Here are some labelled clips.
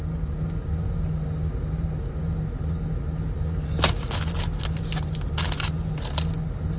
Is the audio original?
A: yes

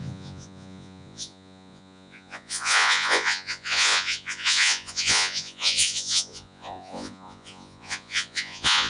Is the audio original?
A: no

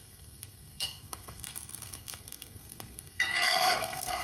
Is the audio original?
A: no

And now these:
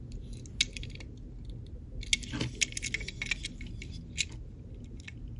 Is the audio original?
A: yes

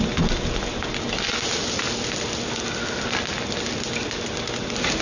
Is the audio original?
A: yes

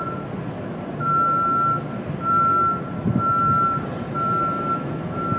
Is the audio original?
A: yes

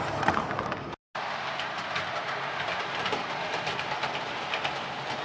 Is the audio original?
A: yes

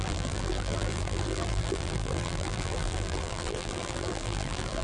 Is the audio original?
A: no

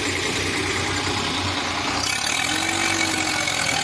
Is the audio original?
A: yes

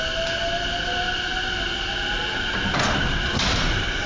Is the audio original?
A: yes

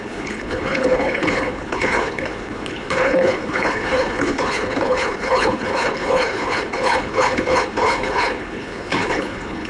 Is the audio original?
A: no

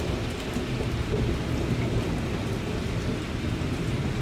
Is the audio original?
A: yes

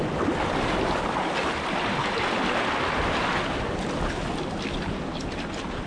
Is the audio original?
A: yes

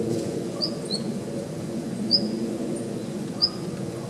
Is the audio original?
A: no